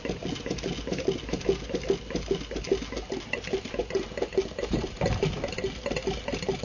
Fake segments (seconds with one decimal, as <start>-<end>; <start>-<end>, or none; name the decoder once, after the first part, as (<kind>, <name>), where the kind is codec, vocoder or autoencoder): none